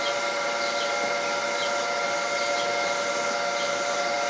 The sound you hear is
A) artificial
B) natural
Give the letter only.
B